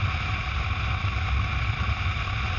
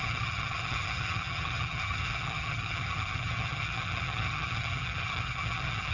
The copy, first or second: second